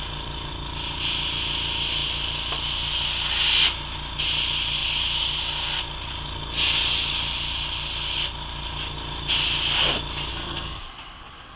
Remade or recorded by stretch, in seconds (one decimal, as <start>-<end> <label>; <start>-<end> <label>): 0.0-10.3 recorded; 10.3-10.8 remade; 10.8-11.6 recorded

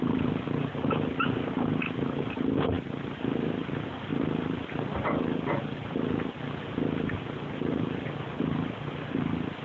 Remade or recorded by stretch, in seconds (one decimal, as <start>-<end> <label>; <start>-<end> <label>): 0.0-9.6 recorded

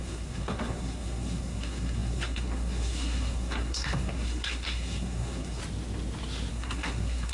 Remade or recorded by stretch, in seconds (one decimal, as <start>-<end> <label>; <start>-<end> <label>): 0.0-5.6 remade; 5.6-6.5 recorded; 6.5-7.3 remade

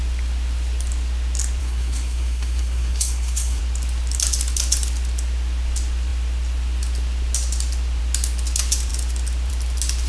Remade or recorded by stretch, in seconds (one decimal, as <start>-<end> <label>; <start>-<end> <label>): 0.0-1.6 recorded; 1.6-3.6 remade; 3.6-10.1 recorded

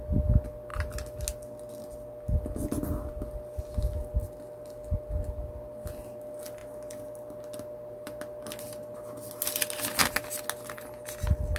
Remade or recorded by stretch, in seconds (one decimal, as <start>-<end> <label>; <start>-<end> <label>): 0.0-11.6 recorded

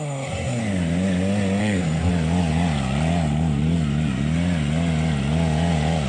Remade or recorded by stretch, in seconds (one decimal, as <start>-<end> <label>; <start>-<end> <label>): 0.0-0.6 remade; 0.6-1.6 recorded; 1.6-2.1 remade; 2.1-6.1 recorded

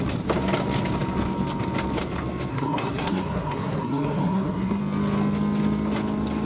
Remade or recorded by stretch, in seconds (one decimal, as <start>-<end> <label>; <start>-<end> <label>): 0.0-2.5 recorded; 2.5-4.8 remade; 4.8-6.5 recorded

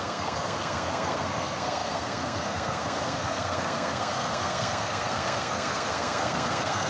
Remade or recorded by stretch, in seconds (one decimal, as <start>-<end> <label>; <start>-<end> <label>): 0.0-6.9 remade